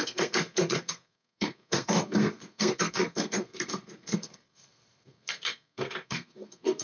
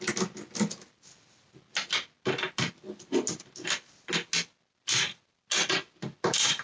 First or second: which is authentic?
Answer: second